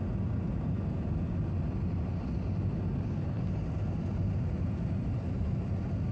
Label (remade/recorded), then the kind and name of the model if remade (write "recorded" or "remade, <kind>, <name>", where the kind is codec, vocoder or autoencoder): recorded